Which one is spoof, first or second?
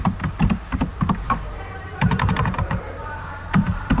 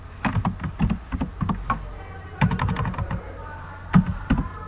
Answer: first